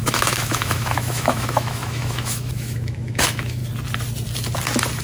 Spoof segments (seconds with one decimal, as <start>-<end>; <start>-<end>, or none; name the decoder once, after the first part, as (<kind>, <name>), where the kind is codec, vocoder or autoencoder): 0.0-3.6 (autoencoder, DAC-VAE)